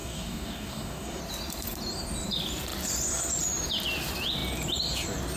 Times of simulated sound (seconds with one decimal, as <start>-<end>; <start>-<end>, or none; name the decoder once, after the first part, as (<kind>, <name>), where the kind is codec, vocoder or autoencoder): 0.0-1.2 (codec, DAC)